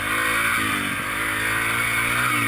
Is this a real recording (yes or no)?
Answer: yes